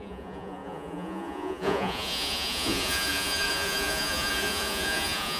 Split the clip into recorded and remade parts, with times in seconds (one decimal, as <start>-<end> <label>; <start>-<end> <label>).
0.0-5.4 remade